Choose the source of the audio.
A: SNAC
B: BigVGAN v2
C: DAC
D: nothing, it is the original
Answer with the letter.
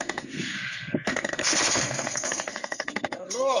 A